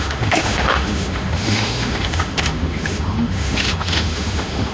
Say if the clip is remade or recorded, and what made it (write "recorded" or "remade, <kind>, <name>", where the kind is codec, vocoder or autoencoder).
remade, autoencoder, DAC-VAE